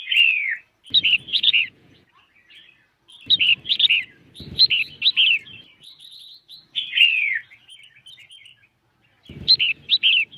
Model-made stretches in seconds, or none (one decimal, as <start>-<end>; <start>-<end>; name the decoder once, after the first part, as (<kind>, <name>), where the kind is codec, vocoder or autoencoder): 1.3-2.1 (vocoder, Vocos)

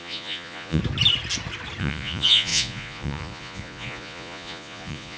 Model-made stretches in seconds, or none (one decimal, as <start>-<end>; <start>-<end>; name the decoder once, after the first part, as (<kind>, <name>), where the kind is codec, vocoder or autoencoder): 0.0-0.8 (vocoder, Vocos); 1.8-5.2

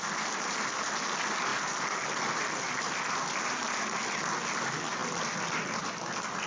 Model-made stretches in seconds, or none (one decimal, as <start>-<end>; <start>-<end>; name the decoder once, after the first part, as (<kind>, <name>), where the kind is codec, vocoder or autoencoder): none

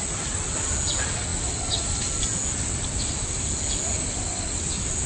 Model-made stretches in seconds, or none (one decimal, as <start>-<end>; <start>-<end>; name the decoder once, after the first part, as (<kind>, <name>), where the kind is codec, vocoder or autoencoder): none

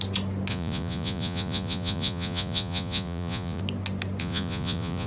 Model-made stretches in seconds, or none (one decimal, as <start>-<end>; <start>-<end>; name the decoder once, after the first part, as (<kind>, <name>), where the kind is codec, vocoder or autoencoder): 0.5-3.6 (vocoder, Vocos); 4.2-5.1

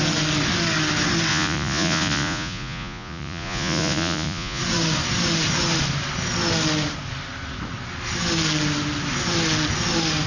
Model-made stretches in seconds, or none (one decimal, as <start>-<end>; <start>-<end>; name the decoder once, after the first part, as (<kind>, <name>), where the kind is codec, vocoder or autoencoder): 1.3-4.6 (vocoder, Vocos)

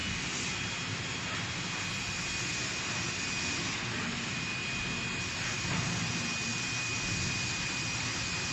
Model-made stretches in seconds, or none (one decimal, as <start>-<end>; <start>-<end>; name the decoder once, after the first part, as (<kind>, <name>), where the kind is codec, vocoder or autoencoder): none